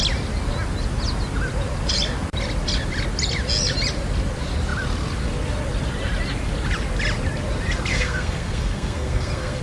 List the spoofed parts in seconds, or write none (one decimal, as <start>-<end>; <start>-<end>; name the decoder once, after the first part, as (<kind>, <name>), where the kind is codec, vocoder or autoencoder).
7.9-9.6 (codec, SNAC)

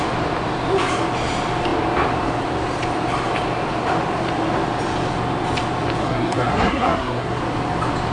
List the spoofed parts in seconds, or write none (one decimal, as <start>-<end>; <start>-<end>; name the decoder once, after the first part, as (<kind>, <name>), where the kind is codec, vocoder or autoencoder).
6.0-7.4 (codec, SNAC)

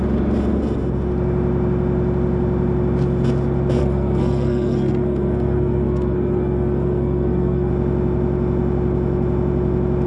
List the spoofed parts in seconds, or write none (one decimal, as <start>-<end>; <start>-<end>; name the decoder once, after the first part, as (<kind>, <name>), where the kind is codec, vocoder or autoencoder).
3.8-7.7 (codec, SNAC)

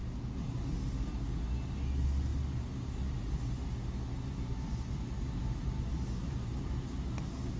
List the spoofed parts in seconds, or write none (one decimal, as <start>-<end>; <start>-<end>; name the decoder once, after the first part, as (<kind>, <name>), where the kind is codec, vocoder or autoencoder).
none

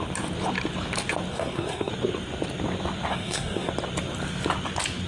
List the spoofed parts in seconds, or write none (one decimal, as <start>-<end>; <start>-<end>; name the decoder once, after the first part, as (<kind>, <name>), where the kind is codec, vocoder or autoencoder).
1.3-1.9 (codec, SNAC); 3.1-3.7

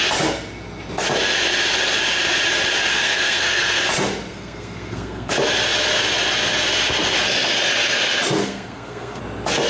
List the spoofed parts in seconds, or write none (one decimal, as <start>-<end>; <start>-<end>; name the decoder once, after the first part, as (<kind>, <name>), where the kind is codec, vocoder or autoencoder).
2.9-3.8 (codec, SNAC); 4.3-5.3; 8.4-9.2